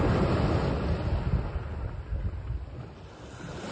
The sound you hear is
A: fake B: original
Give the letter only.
B